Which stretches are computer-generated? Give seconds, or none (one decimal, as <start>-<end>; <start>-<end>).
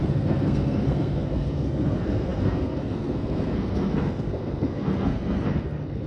0.0-6.1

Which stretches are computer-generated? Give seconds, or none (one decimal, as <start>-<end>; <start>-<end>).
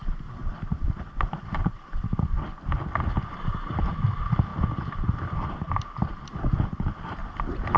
none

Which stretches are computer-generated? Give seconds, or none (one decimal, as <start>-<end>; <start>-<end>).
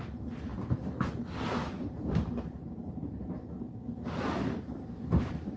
0.0-0.5; 2.0-2.8; 4.5-5.6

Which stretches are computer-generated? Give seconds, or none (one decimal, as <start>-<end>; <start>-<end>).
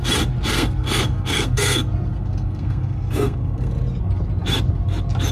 0.5-3.7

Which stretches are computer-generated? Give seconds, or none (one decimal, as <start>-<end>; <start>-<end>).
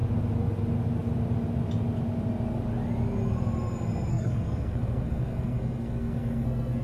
4.1-6.8